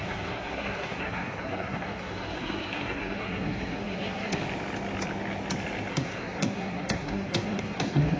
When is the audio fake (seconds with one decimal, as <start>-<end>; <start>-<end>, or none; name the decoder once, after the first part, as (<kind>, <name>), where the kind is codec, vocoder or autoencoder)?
0.0-4.4 (codec, SNAC); 5.9-8.2